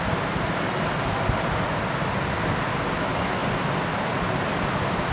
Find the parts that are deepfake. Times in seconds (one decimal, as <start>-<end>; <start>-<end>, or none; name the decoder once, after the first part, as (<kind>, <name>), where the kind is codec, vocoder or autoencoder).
none